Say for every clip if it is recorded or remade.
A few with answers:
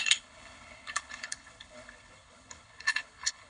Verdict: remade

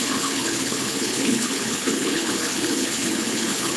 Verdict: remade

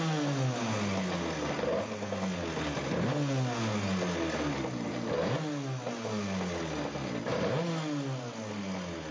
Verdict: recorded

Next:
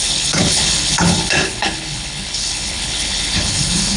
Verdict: remade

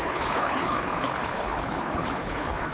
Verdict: remade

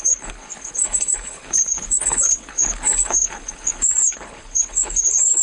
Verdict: remade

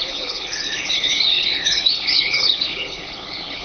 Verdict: remade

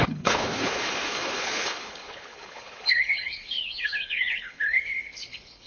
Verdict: remade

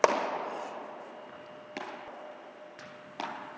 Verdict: recorded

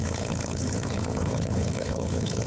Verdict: remade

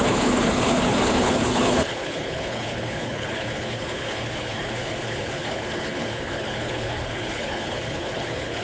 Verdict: remade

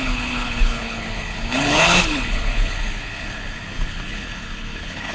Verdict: remade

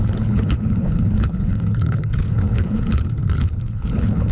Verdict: remade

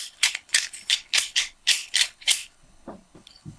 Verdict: remade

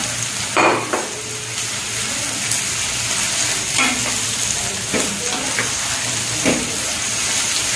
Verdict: recorded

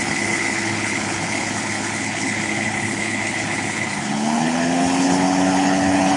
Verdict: remade